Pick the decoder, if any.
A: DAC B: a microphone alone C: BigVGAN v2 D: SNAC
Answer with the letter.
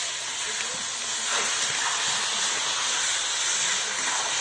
B